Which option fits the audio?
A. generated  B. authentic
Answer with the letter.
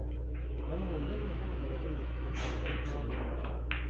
A